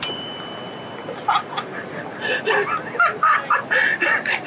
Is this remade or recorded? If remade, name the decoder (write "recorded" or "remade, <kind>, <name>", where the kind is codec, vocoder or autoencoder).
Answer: remade, vocoder, BigVGAN v2